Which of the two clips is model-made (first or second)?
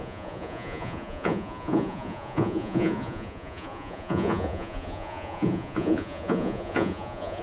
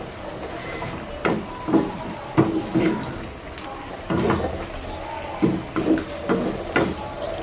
first